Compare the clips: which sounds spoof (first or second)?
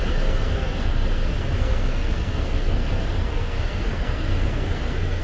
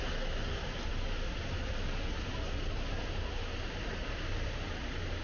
first